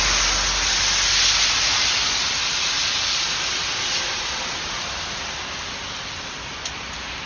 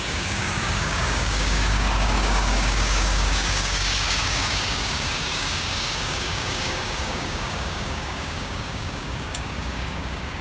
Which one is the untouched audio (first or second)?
first